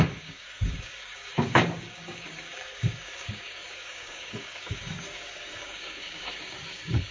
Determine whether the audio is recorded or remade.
remade